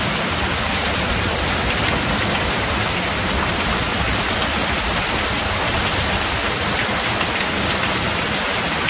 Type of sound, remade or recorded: recorded